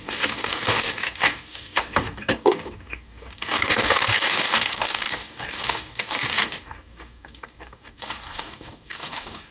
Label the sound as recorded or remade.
remade